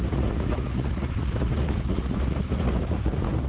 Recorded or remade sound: remade